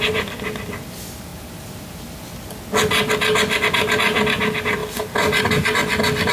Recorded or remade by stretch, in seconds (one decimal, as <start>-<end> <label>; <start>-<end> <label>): 0.0-1.3 recorded; 1.3-2.0 remade; 2.0-6.3 recorded